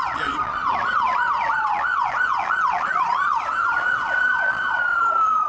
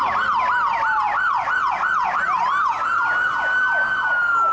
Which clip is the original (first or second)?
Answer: second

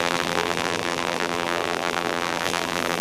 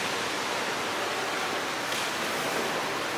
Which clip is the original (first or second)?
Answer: second